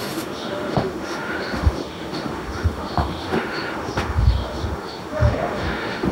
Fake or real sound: fake